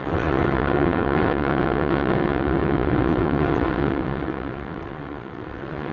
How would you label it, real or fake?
fake